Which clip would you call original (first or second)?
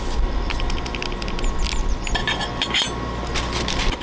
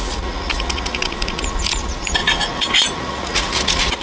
first